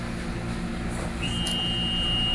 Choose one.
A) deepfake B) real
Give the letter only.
B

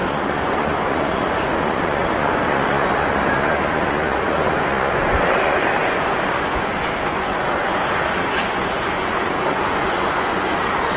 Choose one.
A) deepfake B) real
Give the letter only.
A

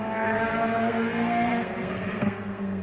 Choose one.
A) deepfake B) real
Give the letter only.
A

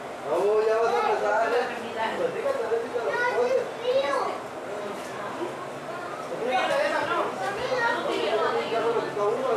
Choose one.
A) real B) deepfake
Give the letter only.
A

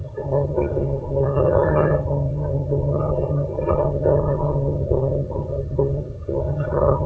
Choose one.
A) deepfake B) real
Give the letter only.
A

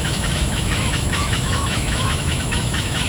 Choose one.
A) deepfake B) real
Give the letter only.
A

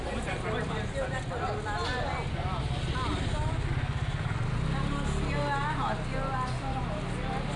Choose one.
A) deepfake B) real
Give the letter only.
B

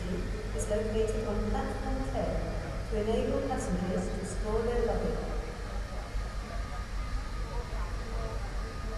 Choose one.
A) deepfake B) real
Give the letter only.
B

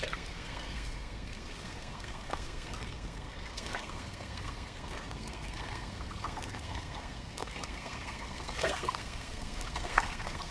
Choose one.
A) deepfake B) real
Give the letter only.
A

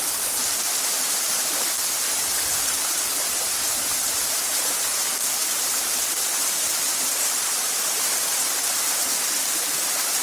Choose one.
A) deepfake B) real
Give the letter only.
A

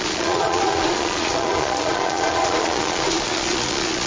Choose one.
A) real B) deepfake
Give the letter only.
B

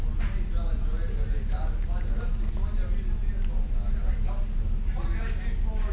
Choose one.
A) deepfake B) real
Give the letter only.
B